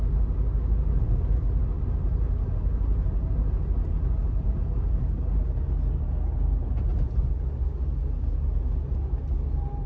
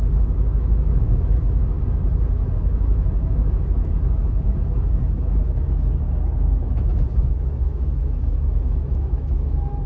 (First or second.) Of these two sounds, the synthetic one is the second